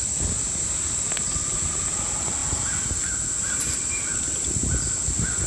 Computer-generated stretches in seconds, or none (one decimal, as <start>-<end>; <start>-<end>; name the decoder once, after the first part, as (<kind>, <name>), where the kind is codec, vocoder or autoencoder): none